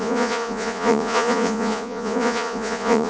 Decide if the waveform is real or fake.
fake